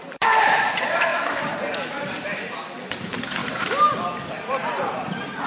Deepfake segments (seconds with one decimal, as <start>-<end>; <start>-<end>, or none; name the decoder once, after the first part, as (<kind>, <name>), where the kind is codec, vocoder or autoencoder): 0.0-1.1 (vocoder, BigVGAN v2); 2.1-3.4; 4.2-5.5